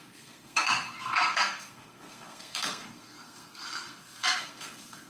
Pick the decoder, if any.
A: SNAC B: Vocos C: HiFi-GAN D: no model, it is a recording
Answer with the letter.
A